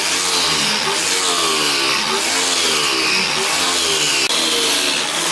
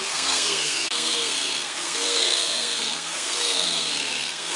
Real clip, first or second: first